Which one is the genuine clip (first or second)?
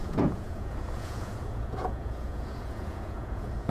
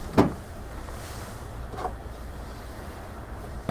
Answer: second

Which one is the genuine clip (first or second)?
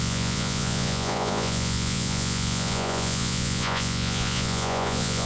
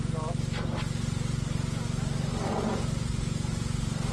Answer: second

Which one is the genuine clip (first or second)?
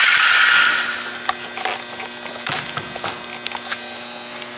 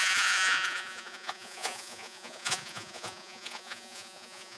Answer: first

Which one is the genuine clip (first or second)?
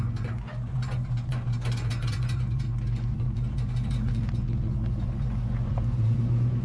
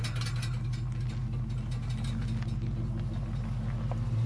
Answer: second